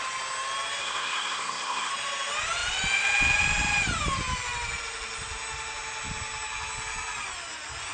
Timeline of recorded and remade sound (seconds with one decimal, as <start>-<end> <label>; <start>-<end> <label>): 0.0-0.8 recorded; 0.8-1.9 remade; 1.9-7.9 recorded